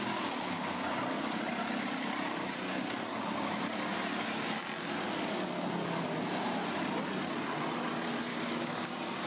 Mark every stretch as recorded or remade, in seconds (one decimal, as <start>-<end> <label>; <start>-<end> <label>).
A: 0.0-8.3 recorded; 8.3-8.9 remade; 8.9-9.3 recorded

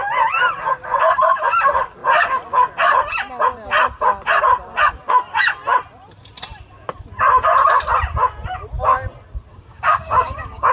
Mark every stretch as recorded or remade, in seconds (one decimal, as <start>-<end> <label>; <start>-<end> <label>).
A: 0.0-9.5 recorded; 9.5-10.7 remade